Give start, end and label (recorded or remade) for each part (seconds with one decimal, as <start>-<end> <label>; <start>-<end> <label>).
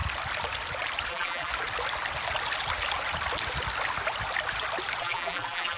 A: 0.0-1.1 recorded; 1.1-1.5 remade; 1.5-5.0 recorded; 5.0-5.8 remade